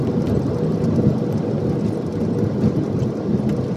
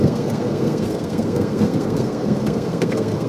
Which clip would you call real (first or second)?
first